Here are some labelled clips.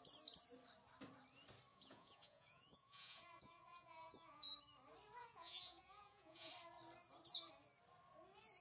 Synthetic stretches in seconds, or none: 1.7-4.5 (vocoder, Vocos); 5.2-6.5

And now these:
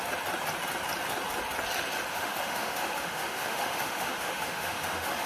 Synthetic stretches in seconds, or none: 2.1-5.3 (autoencoder, DAC-VAE)

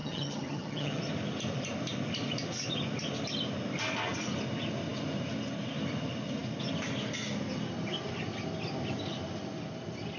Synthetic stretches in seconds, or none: 0.0-1.0 (vocoder, HiFi-GAN)